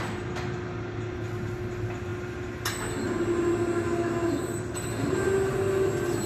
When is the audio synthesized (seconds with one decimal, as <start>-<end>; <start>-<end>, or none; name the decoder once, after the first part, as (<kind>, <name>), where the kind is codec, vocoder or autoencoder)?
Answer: none